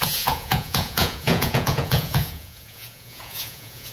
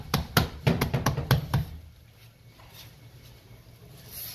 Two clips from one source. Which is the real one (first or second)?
second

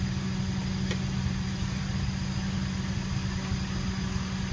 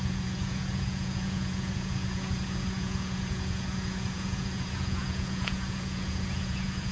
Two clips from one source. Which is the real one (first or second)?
first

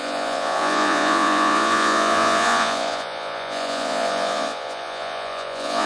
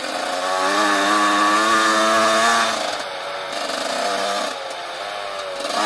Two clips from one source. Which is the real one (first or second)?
second